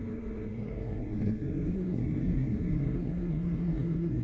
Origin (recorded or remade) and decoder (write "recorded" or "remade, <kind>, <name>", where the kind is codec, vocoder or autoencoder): remade, codec, SNAC